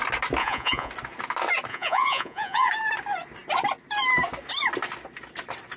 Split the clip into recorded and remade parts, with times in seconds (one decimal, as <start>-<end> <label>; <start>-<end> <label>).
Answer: 0.0-0.4 recorded; 0.4-0.9 remade; 0.9-1.7 recorded; 1.7-2.7 remade; 2.7-5.8 recorded